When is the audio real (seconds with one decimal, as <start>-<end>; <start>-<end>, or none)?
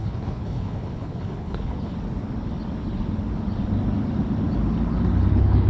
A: 1.9-5.3